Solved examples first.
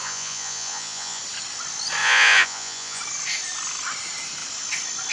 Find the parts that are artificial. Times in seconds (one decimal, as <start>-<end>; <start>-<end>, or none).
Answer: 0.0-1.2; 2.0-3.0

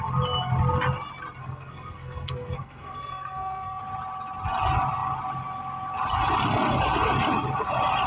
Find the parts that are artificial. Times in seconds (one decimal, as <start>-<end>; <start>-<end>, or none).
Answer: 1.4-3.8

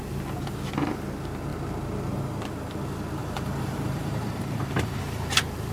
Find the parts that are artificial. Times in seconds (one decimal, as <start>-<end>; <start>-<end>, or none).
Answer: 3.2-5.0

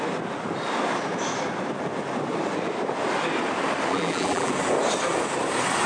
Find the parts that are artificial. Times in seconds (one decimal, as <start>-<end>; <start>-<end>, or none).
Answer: 3.9-4.5

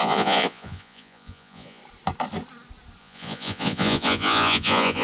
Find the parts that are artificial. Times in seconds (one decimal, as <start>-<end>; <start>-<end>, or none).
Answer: 0.0-1.8; 3.0-5.0

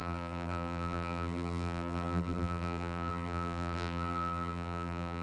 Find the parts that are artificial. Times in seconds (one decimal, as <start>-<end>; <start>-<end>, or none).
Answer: 0.0-5.2

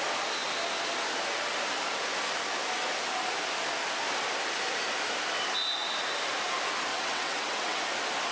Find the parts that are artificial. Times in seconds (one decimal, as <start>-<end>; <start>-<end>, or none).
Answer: 6.9-7.8